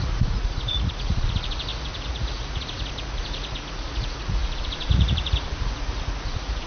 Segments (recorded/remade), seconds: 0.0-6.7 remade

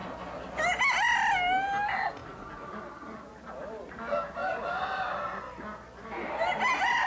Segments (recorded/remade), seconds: 0.0-7.1 recorded

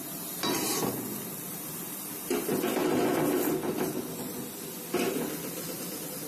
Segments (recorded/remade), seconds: 0.0-6.3 recorded

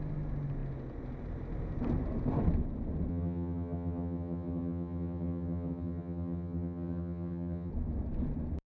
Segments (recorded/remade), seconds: 0.0-3.1 recorded; 3.1-7.7 remade; 7.7-8.7 recorded

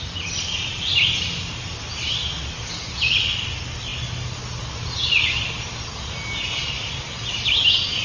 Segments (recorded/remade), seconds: 0.0-8.0 recorded